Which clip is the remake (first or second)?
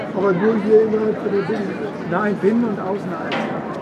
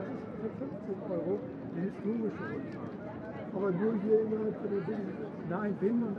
second